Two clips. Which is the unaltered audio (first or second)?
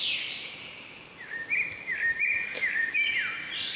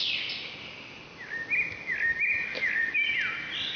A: second